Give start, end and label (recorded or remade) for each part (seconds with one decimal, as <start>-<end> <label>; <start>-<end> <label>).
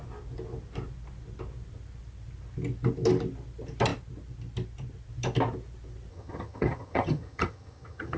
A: 0.0-6.1 recorded; 6.1-8.2 remade